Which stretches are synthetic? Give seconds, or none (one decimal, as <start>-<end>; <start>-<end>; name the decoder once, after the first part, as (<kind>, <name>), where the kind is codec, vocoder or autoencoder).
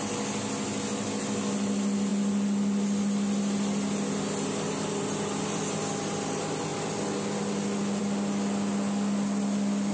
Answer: none